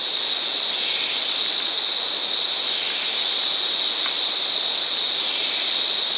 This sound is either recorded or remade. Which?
recorded